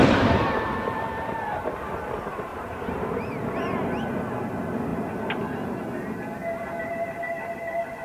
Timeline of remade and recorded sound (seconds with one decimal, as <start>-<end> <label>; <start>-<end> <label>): 0.0-1.8 remade; 1.8-2.5 recorded; 2.5-4.1 remade; 4.1-8.0 recorded